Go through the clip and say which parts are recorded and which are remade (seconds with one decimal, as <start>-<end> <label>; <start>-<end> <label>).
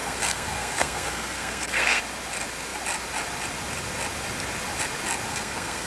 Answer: 0.0-2.0 remade; 2.0-5.3 recorded; 5.3-5.9 remade